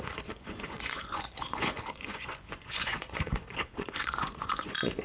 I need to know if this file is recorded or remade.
remade